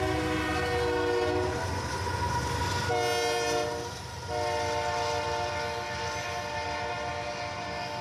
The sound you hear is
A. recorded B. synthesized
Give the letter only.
A